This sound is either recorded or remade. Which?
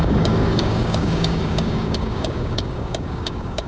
remade